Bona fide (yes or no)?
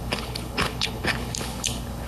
no